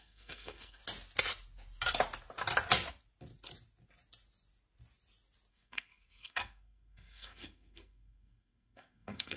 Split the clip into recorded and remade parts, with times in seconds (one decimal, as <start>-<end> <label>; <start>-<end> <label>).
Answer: 0.0-0.8 remade; 0.8-5.5 recorded; 5.5-9.4 remade